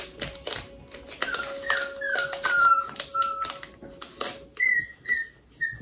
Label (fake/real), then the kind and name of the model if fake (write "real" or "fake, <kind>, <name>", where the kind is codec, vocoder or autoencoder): real